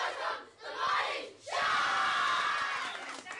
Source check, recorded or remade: recorded